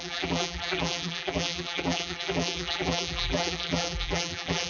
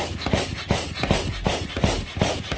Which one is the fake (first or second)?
first